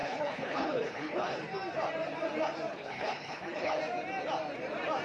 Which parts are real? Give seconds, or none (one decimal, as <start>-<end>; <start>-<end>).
1.4-2.7; 3.8-5.0

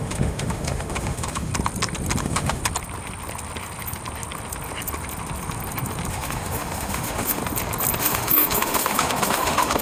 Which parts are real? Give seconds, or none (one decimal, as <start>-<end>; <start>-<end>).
1.5-2.2; 2.6-6.1; 7.4-8.0

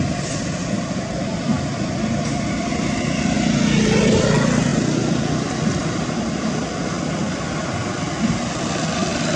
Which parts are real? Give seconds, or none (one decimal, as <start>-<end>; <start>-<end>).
0.0-9.4

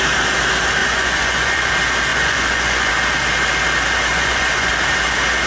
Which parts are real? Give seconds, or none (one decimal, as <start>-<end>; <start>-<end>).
0.0-0.8; 1.7-2.1; 2.9-4.1; 4.7-5.5